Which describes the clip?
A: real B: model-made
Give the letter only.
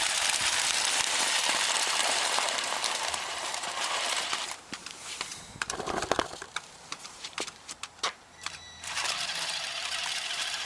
B